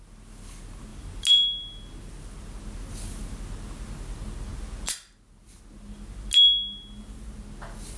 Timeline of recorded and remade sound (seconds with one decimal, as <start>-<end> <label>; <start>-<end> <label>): 0.0-8.0 recorded